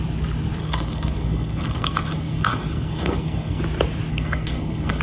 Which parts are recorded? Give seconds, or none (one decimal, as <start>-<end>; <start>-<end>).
0.0-0.6; 3.6-4.1